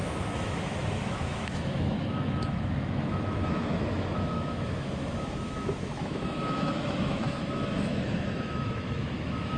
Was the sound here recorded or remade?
remade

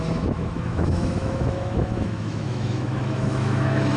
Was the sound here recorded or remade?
remade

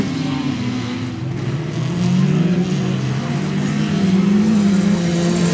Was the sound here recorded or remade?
recorded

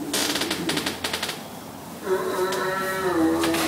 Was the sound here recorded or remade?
recorded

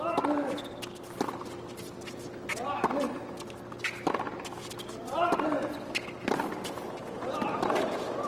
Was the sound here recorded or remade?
recorded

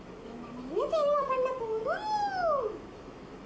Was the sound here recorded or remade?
remade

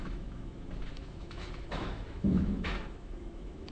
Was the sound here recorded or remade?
remade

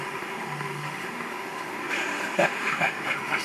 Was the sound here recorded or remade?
remade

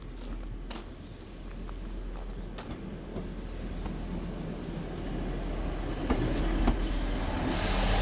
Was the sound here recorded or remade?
recorded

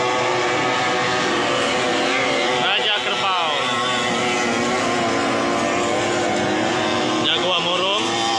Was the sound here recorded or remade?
recorded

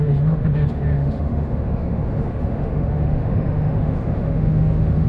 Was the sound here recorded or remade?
remade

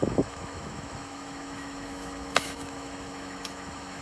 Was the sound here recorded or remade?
remade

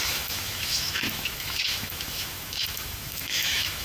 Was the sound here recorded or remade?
remade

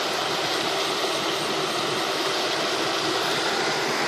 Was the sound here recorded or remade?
recorded